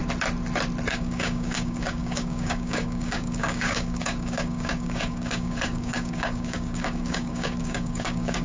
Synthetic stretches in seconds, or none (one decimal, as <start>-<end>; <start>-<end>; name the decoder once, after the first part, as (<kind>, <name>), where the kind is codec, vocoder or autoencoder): 0.9-8.4 (codec, DAC)